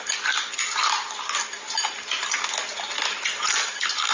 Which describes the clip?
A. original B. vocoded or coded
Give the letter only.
A